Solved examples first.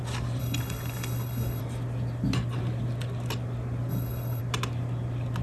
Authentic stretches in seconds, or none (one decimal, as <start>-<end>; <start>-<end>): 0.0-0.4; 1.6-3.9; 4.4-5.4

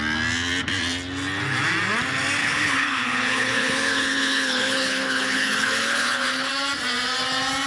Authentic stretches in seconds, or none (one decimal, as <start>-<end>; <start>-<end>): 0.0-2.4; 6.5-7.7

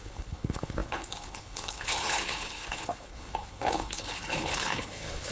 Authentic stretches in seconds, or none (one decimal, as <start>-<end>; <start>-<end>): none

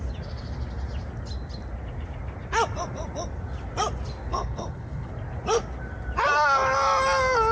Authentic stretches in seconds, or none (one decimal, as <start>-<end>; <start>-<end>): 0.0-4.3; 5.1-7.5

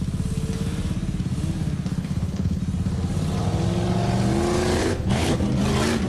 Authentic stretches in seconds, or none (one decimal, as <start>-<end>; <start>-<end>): 0.0-2.0; 2.6-4.8; 5.4-6.1